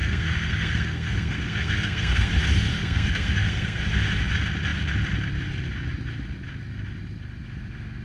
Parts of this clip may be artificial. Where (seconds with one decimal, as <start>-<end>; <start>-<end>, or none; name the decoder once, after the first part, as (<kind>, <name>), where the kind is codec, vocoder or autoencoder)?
0.0-2.3 (codec, SNAC); 2.7-3.8